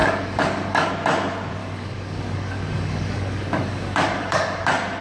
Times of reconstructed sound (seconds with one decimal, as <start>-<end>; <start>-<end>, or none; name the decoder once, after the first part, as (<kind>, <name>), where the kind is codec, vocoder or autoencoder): 0.0-0.9 (codec, DAC); 1.6-4.6